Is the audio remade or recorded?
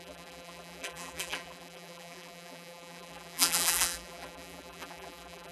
remade